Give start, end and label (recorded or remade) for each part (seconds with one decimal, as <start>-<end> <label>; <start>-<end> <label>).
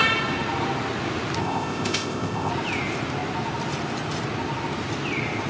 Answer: 0.0-1.4 recorded; 1.4-2.5 remade; 2.5-5.5 recorded